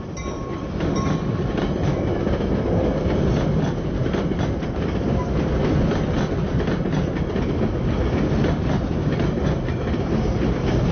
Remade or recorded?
recorded